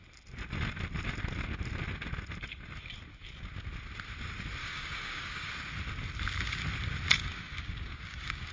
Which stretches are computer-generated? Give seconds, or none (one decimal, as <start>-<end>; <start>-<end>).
4.6-5.5; 7.2-8.5